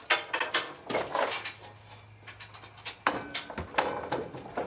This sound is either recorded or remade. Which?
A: recorded